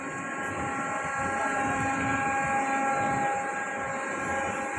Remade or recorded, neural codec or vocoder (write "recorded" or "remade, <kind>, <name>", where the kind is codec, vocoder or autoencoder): recorded